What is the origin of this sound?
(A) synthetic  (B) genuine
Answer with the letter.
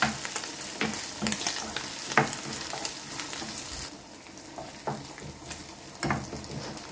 B